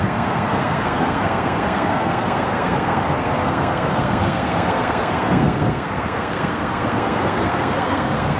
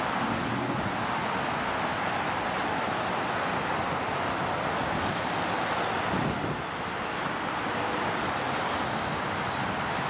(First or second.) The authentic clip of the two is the second